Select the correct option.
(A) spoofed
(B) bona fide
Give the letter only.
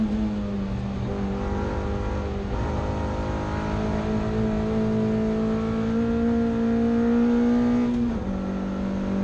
B